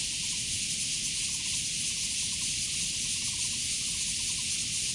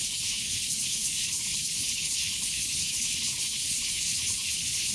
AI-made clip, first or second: second